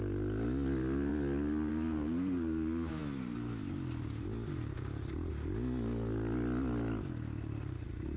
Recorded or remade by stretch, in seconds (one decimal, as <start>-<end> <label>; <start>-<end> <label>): 0.0-8.2 recorded